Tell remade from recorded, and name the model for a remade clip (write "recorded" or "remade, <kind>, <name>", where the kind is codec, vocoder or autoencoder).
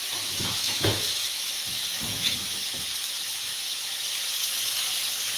remade, autoencoder, DAC-VAE